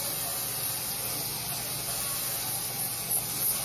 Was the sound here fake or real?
real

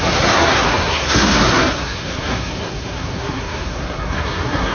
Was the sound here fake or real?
fake